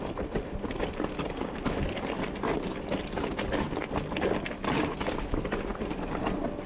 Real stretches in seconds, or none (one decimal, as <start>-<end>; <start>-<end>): 0.0-6.7